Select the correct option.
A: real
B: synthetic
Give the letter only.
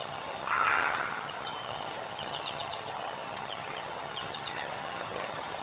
B